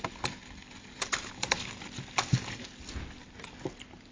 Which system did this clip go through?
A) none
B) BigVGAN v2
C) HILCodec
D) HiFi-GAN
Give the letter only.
A